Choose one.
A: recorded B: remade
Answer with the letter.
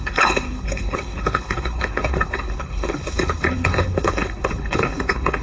B